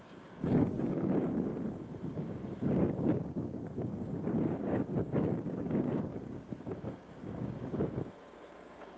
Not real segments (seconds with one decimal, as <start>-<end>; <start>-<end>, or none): 0.0-1.5; 2.1-9.0

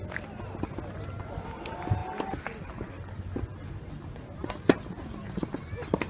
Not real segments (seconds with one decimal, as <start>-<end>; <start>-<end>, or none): none

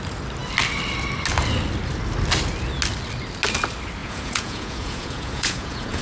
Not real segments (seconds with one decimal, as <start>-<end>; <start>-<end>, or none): 4.0-6.0

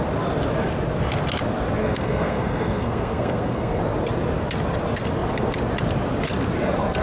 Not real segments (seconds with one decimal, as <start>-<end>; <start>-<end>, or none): 1.8-3.8